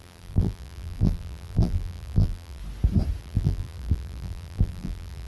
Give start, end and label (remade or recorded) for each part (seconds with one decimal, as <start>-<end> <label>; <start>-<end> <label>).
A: 0.0-2.6 remade; 2.6-3.2 recorded; 3.2-5.3 remade